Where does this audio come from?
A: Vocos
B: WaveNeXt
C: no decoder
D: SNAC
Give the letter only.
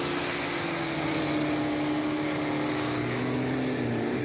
C